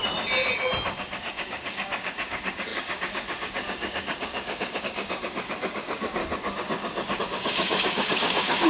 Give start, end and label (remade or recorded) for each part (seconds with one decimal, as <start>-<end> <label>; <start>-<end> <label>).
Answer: 0.0-1.3 recorded; 1.3-6.2 remade; 6.2-7.2 recorded; 7.2-8.7 remade